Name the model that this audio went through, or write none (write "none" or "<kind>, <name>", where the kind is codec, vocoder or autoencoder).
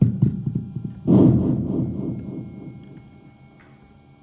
none